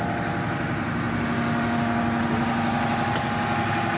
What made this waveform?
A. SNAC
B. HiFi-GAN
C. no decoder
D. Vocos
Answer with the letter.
C